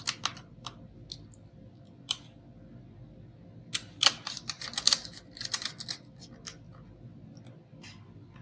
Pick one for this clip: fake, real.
real